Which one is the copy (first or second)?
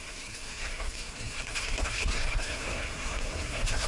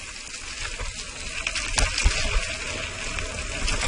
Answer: first